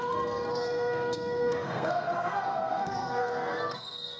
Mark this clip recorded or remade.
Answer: remade